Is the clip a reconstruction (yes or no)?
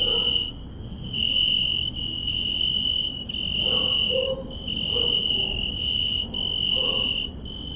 no